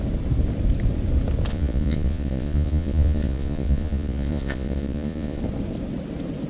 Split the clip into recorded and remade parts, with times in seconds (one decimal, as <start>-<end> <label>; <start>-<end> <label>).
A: 0.0-1.5 recorded; 1.5-5.4 remade; 5.4-6.5 recorded